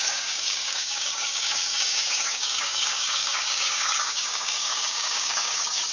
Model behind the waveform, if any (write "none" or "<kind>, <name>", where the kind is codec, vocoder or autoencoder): codec, DAC